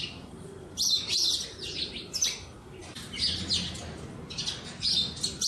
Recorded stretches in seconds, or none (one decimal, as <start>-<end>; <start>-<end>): 0.0-5.5